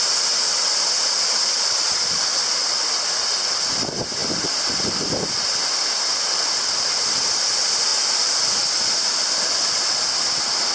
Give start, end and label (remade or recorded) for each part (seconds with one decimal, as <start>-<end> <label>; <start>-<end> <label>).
0.0-10.7 recorded